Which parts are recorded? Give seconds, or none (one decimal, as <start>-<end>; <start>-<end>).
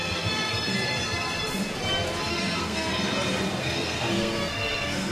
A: 0.5-2.3; 2.9-3.6